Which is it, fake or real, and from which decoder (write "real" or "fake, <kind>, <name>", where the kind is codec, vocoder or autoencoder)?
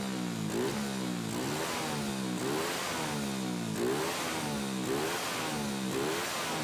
real